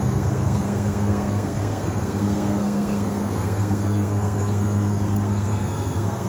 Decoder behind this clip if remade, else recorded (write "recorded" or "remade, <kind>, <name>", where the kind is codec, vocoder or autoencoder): remade, codec, SNAC